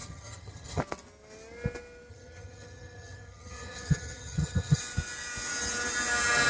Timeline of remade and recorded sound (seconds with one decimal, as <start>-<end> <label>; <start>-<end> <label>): 0.0-0.8 remade; 0.8-2.1 recorded; 2.1-4.8 remade; 4.8-6.5 recorded